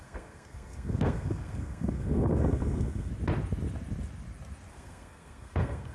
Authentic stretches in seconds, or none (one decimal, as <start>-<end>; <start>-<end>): 3.1-4.7